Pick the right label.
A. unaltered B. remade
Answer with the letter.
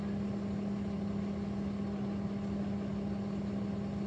A